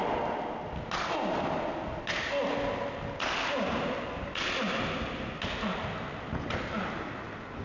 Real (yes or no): yes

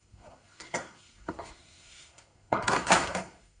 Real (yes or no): no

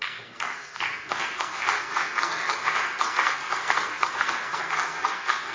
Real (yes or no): no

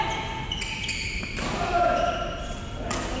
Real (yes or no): yes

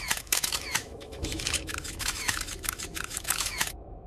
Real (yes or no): no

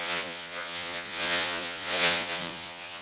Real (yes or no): no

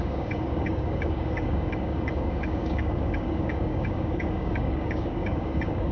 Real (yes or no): no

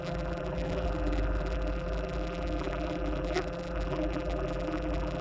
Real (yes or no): no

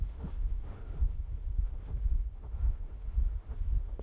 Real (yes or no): no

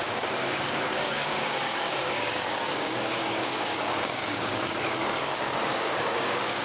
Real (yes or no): no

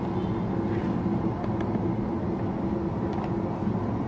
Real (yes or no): yes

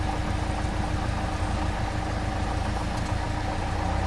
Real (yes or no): yes